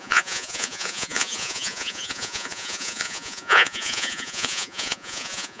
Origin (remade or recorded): remade